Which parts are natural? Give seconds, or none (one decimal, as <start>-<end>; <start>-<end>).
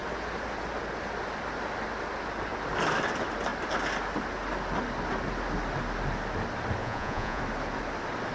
0.0-6.8; 7.4-8.3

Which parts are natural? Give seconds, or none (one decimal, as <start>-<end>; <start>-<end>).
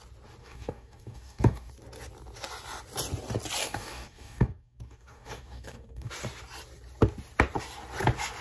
0.0-0.4; 1.7-3.6; 6.1-8.4